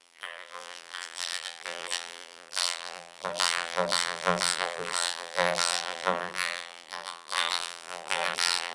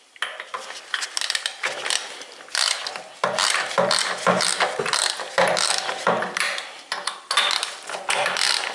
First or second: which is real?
second